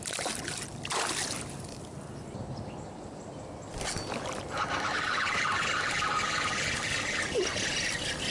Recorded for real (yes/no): yes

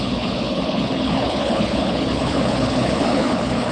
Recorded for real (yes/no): no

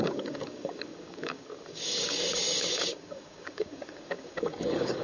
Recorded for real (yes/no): no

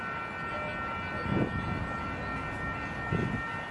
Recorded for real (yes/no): yes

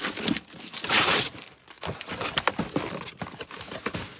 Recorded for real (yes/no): yes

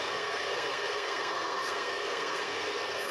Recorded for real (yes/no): no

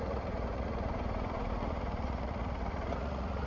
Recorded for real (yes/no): no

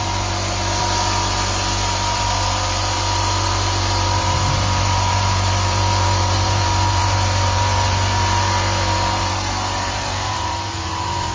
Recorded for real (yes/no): no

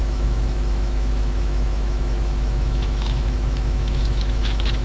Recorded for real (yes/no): no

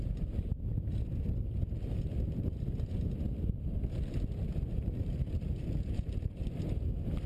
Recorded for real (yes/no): yes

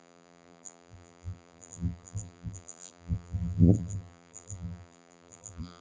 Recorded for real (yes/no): no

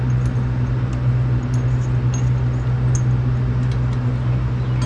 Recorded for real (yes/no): yes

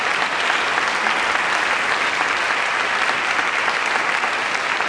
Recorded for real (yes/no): yes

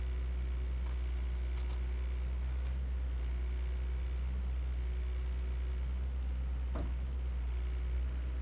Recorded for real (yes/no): yes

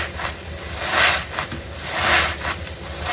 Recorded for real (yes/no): yes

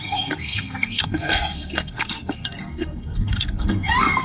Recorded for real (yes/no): no